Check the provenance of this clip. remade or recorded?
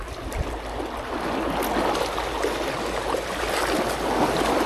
recorded